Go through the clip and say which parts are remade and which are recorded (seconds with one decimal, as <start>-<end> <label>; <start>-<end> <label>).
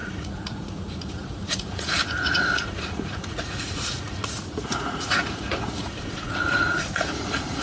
0.0-7.6 remade